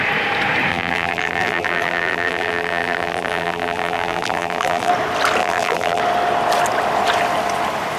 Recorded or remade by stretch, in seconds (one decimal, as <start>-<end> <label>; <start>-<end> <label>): 0.0-0.7 recorded; 0.7-4.9 remade; 4.9-5.4 recorded; 5.4-6.0 remade; 6.0-8.0 recorded